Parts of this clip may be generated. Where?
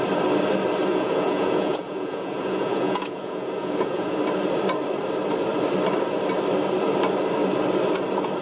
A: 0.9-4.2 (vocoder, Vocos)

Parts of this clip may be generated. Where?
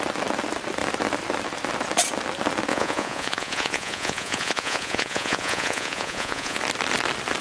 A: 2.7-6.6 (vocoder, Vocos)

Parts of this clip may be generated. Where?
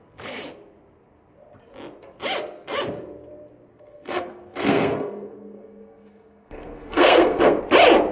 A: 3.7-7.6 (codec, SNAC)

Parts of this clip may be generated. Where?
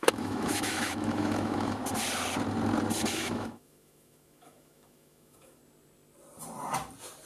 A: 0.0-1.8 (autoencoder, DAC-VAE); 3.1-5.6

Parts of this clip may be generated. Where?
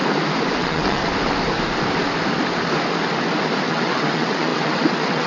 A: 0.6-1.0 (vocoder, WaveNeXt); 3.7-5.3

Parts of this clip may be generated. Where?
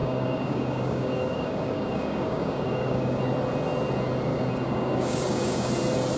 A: 0.0-3.2 (codec, DAC); 4.3-5.7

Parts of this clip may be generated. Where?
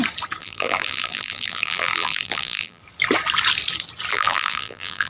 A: 0.4-2.8 (vocoder, BigVGAN v2); 4.1-5.1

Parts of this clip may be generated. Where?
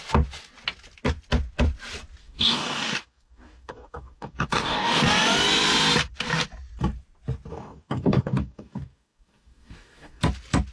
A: 2.2-5.0 (codec, DAC); 7.5-10.2